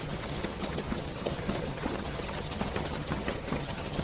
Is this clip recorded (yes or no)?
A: no